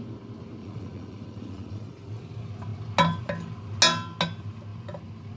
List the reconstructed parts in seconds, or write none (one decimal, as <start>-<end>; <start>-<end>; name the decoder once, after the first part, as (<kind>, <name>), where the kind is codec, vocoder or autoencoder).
0.6-2.0 (vocoder, Vocos)